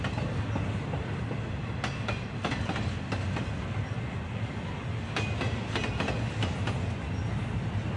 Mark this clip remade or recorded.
recorded